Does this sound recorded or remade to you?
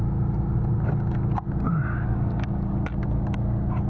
recorded